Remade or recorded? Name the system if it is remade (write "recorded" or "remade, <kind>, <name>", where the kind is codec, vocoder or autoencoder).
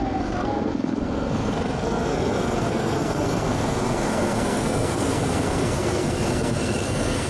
remade, codec, SNAC